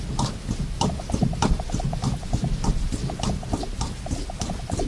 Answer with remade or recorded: recorded